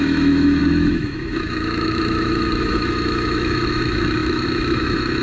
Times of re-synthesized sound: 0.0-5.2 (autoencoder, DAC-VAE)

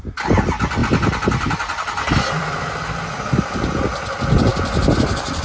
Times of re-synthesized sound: none

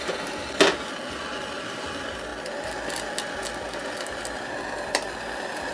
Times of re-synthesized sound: 3.8-5.7 (vocoder, BigVGAN v2)

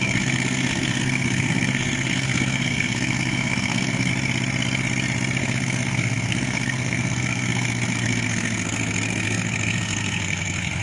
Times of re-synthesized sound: 0.0-4.1 (codec, SNAC); 5.4-10.8